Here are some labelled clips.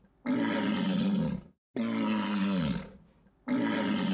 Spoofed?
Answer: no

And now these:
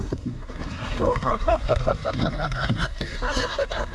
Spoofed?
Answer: yes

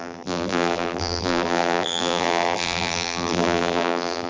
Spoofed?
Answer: yes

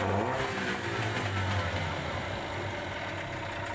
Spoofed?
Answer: no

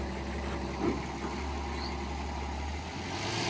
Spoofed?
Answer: no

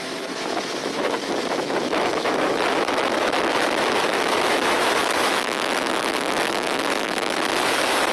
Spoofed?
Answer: yes